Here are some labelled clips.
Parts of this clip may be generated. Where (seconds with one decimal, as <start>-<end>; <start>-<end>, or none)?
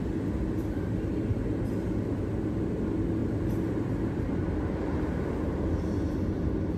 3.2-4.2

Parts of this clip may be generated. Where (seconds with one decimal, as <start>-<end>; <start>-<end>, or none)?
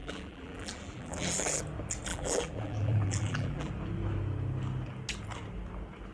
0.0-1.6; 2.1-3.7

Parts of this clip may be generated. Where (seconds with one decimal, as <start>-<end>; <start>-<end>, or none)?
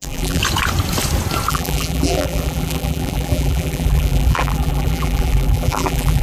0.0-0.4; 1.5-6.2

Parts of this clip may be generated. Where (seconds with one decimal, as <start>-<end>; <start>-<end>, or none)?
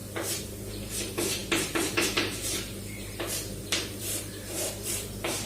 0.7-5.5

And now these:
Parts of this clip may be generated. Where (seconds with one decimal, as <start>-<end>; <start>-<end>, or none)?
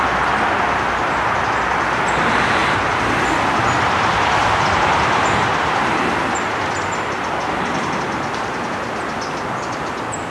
4.4-5.8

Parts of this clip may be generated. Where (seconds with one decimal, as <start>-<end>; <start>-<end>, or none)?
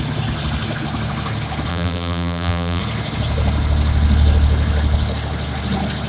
1.7-2.8